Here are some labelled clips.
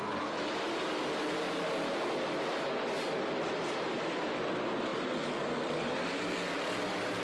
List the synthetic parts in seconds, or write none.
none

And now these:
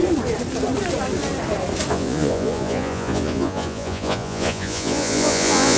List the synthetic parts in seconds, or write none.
1.9-5.8

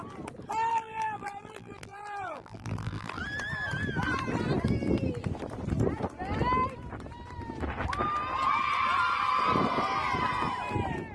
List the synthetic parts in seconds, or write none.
0.7-3.2